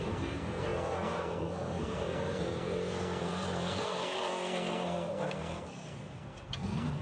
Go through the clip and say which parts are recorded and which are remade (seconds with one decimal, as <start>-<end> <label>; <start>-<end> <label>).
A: 0.0-7.0 remade